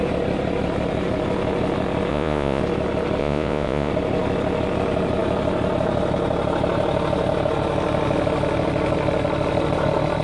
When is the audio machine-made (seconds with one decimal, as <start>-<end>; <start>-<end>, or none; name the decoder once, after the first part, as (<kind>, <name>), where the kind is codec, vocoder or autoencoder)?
2.1-2.6 (vocoder, Vocos); 3.2-3.9